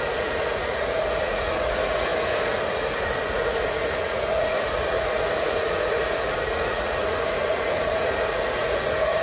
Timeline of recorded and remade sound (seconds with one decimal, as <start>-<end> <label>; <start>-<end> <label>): 0.0-9.2 remade